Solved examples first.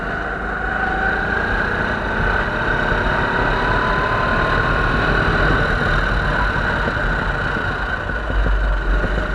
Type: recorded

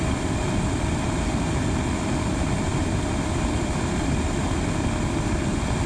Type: remade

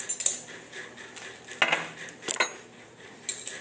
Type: recorded